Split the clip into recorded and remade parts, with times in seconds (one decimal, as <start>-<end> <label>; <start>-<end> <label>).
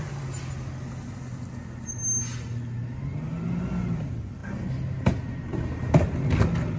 0.0-6.8 recorded